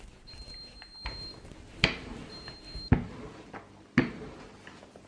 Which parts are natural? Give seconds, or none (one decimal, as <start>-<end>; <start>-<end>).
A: 0.0-5.1